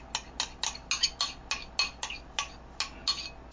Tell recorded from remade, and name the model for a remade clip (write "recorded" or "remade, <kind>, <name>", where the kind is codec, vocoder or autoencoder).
recorded